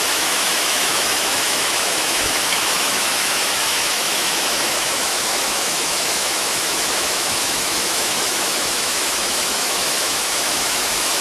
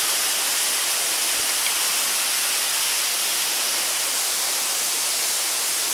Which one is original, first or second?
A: second